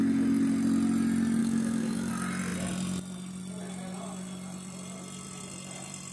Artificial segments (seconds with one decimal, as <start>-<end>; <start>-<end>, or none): 1.4-2.1